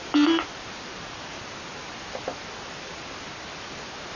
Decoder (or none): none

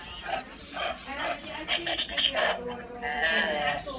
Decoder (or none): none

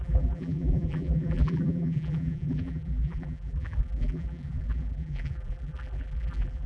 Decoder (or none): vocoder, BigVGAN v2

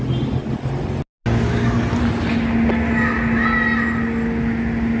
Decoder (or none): none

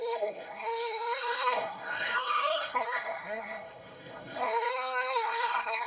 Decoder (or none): codec, SNAC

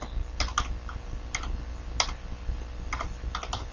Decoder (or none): none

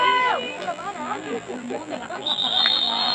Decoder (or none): vocoder, BigVGAN v2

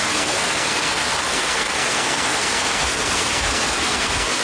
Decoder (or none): codec, SNAC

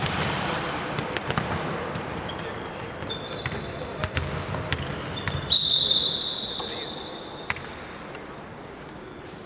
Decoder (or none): vocoder, BigVGAN v2